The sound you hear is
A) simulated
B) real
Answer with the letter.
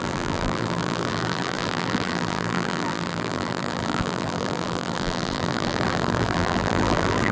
A